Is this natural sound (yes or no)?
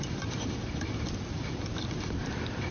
no